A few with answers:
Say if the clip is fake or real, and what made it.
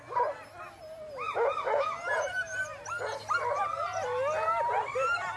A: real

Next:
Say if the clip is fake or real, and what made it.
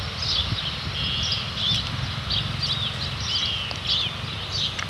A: real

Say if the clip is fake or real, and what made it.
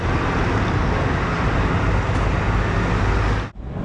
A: real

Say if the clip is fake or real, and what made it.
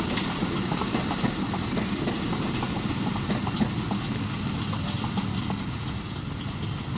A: real